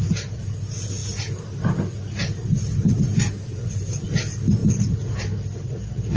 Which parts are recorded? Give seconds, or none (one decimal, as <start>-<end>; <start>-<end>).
0.0-6.2